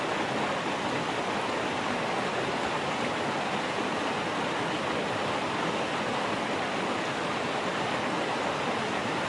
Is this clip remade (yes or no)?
no